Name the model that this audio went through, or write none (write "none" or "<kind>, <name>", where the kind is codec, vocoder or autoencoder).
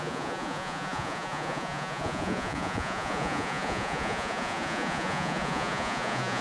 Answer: vocoder, Vocos